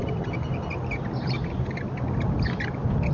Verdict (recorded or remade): recorded